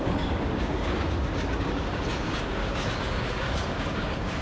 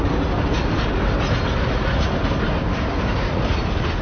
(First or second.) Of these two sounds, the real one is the second